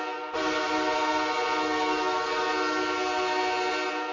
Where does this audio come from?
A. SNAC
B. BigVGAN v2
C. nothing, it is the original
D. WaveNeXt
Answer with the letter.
C